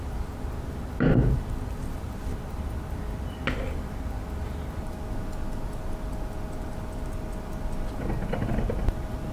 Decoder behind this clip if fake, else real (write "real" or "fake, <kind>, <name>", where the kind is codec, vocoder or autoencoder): real